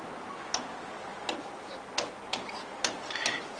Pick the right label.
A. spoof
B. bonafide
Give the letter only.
B